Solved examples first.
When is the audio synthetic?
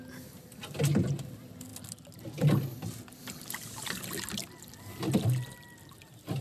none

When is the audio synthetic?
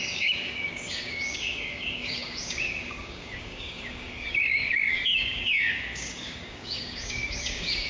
0.0-7.9 (codec, DAC)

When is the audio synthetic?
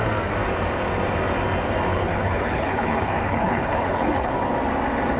1.9-4.3 (codec, HILCodec)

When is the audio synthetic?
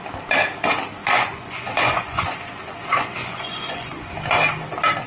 1.0-4.1 (vocoder, Vocos)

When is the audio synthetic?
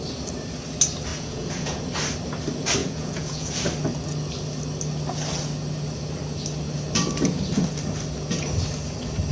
1.1-1.8 (vocoder, Vocos); 2.8-3.5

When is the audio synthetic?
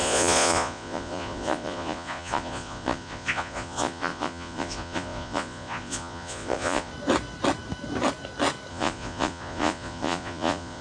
0.0-6.9 (vocoder, Vocos); 8.7-10.8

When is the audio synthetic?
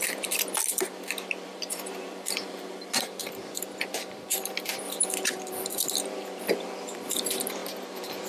0.0-7.6 (vocoder, BigVGAN v2)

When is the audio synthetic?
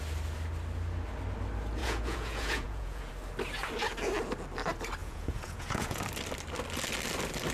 1.8-3.1 (vocoder, Vocos); 5.0-6.0